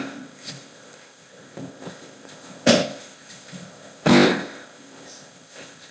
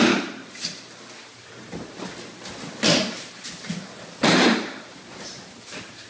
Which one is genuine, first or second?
second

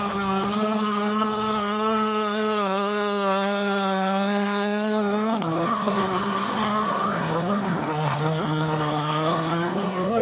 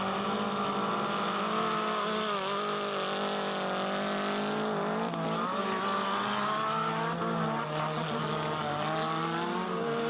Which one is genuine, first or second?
second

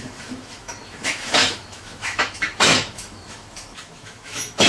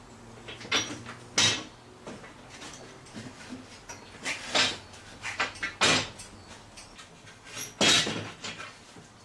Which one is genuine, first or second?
second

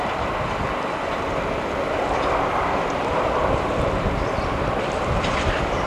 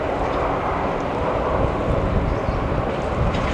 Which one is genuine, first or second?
second